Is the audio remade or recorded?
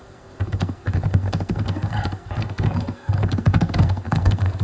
remade